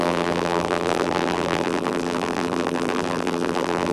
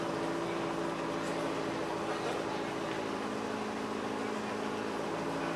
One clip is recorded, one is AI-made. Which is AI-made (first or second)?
first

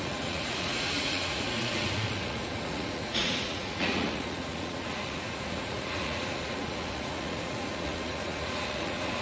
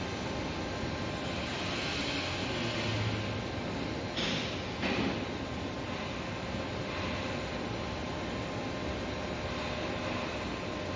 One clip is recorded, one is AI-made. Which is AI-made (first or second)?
first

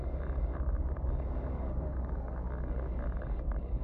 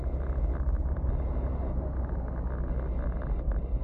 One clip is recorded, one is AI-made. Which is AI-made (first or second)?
first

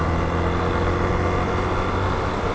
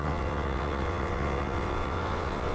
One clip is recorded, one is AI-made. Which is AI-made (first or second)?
second